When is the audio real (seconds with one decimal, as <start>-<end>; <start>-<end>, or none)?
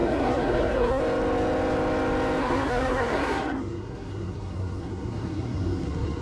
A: 1.0-2.4